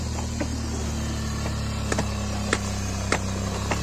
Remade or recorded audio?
recorded